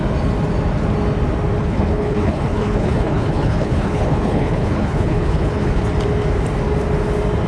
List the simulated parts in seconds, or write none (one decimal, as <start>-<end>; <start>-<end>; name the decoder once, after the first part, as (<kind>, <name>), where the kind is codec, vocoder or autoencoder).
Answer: 1.6-5.8 (codec, HILCodec)